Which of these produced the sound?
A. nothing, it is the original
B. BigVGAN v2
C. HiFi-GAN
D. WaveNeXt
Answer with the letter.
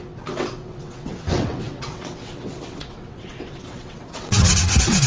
D